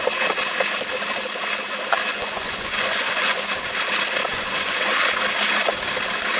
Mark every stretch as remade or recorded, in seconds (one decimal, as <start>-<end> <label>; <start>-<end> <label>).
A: 0.0-2.1 recorded; 2.1-3.5 remade; 3.5-4.3 recorded; 4.3-5.0 remade; 5.0-6.4 recorded